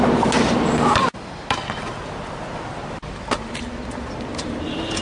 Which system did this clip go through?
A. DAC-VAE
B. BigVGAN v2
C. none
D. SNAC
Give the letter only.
C